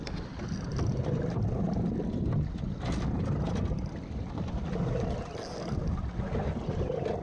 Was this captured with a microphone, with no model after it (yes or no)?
yes